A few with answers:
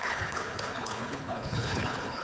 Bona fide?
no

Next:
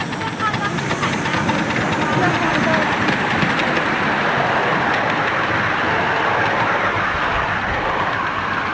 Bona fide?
yes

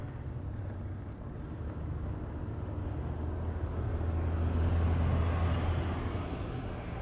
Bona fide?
yes